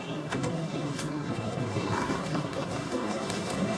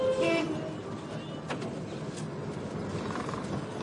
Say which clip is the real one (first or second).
second